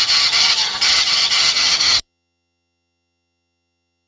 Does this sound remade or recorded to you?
remade